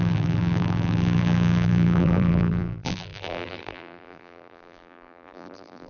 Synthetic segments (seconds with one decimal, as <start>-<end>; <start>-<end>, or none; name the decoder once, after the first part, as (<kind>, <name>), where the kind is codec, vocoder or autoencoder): 0.0-5.9 (vocoder, BigVGAN v2)